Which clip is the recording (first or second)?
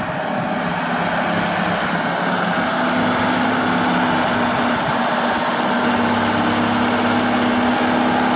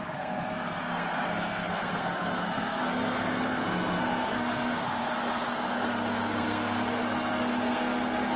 first